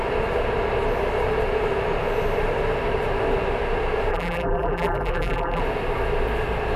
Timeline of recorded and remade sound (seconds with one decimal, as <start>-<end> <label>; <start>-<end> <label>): 0.0-4.1 recorded; 4.1-5.6 remade; 5.6-6.8 recorded